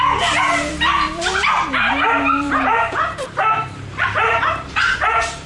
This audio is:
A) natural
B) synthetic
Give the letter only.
B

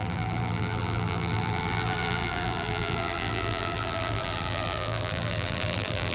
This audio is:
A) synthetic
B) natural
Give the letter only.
A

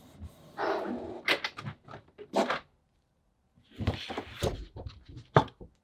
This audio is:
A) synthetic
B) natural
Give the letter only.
B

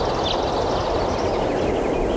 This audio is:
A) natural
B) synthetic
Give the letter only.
A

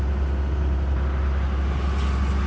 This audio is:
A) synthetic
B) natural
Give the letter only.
B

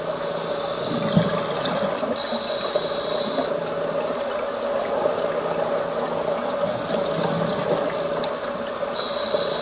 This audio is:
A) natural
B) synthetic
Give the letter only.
A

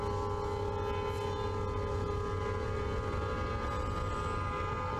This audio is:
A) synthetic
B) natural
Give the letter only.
B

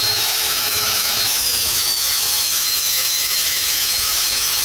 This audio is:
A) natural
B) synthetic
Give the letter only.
B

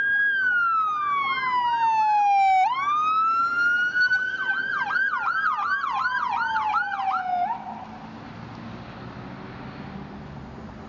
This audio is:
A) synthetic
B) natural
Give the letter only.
B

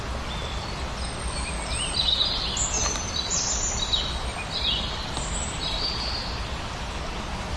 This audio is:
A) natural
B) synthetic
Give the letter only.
A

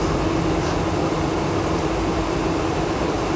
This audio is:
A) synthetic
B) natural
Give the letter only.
B